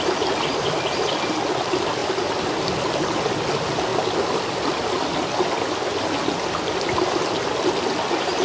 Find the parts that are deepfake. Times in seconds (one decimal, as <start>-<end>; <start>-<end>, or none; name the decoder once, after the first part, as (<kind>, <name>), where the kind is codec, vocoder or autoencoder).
2.0-2.6 (vocoder, BigVGAN v2); 3.9-5.0